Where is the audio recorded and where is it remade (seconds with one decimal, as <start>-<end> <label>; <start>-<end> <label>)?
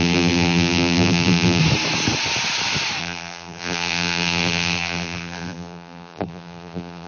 0.0-1.6 remade; 1.6-3.0 recorded; 3.0-7.1 remade